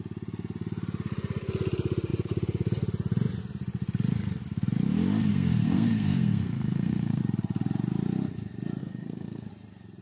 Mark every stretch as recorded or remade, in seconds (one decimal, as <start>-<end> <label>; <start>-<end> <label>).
0.0-5.3 recorded; 5.3-7.2 remade; 7.2-8.8 recorded; 8.8-9.5 remade; 9.5-10.0 recorded